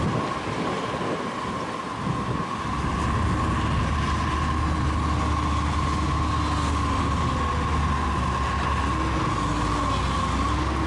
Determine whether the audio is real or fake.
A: real